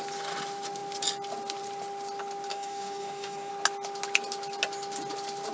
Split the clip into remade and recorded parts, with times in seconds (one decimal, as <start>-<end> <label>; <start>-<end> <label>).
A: 0.0-2.5 recorded; 2.5-3.5 remade; 3.5-5.5 recorded

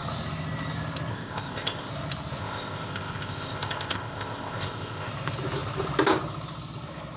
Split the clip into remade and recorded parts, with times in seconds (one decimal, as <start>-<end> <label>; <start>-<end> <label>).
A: 0.0-1.1 recorded; 1.1-1.9 remade; 1.9-2.4 recorded; 2.4-5.1 remade; 5.1-7.2 recorded

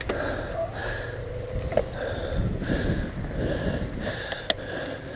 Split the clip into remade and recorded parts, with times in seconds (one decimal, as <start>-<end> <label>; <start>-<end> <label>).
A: 0.0-5.2 recorded

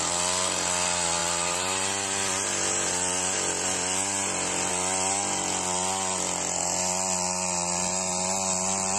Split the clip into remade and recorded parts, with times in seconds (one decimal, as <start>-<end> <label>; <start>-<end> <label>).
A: 0.0-9.0 recorded

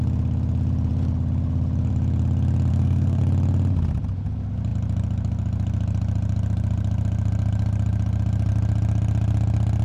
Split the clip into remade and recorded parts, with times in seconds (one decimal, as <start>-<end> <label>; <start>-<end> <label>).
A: 0.0-2.7 recorded; 2.7-3.2 remade; 3.2-9.8 recorded

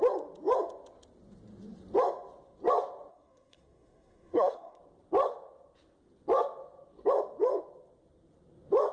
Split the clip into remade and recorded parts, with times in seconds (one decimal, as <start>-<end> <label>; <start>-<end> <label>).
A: 0.0-3.1 recorded; 3.1-4.8 remade; 4.8-8.9 recorded